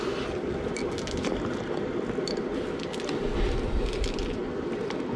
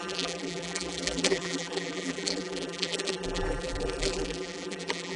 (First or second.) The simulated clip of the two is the second